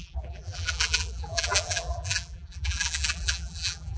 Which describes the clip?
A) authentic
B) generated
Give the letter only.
B